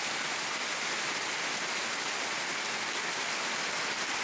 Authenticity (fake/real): real